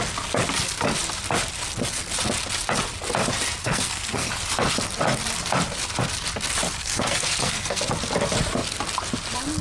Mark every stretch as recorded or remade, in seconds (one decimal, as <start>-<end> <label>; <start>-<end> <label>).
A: 0.0-3.6 recorded; 3.6-4.3 remade; 4.3-6.8 recorded; 6.8-7.8 remade; 7.8-9.6 recorded